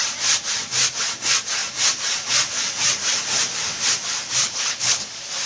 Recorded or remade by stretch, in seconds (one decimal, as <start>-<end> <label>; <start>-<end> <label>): 0.0-4.4 recorded; 4.4-5.1 remade; 5.1-5.5 recorded